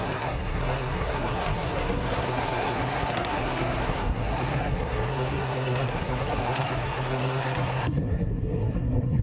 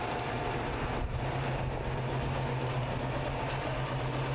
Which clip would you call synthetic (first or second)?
first